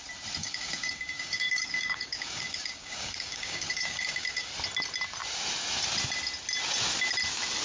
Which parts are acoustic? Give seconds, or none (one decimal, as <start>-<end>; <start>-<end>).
0.0-0.4; 4.5-7.6